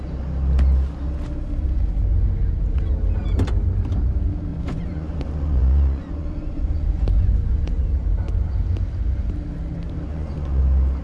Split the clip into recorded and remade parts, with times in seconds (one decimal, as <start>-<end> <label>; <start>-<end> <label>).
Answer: 0.0-4.5 recorded; 4.5-7.7 remade; 7.7-10.1 recorded; 10.1-10.6 remade; 10.6-11.0 recorded